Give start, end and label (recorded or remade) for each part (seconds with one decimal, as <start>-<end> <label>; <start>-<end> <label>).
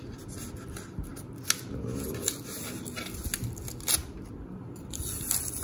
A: 0.0-5.6 recorded